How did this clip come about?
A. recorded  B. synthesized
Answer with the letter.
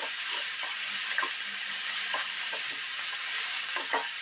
A